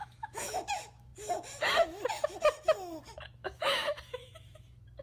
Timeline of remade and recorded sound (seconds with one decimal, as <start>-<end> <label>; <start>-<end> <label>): 0.0-5.0 remade